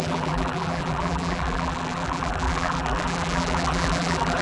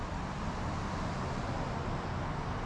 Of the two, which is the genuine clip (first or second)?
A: second